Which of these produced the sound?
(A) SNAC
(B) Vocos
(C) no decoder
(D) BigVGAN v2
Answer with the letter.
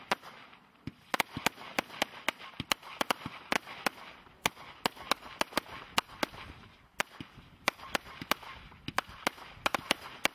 C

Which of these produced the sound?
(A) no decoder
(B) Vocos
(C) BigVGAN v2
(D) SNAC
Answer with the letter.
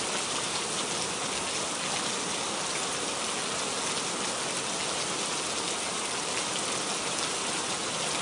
A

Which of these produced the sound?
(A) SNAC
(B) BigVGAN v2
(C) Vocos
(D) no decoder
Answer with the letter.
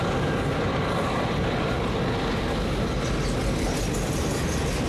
D